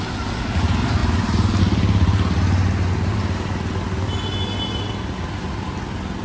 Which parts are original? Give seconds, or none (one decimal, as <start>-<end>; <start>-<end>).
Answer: 0.0-6.2